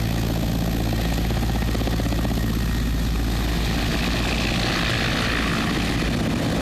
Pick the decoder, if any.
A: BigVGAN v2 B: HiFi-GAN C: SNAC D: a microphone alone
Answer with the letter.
D